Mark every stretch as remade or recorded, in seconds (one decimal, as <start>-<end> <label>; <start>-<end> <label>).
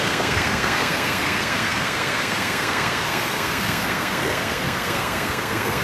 0.0-5.8 remade